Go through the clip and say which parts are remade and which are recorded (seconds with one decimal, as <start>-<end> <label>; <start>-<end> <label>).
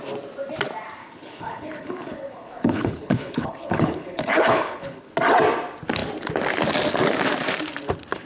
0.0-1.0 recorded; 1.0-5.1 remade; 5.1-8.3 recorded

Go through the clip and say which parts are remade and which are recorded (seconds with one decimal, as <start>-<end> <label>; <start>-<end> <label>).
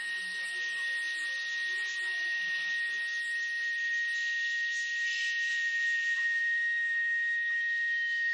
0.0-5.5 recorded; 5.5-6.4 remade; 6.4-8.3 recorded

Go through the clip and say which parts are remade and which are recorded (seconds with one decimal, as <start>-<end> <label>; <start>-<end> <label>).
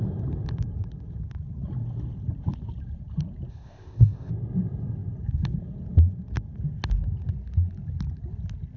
0.0-3.5 recorded; 3.5-4.3 remade; 4.3-8.8 recorded